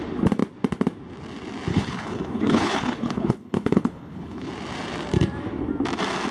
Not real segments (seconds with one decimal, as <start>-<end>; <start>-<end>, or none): 1.7-4.5